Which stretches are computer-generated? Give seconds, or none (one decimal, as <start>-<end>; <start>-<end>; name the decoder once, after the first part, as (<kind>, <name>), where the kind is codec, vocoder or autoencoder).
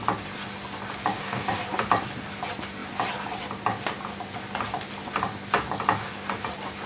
1.1-1.6 (codec, DAC)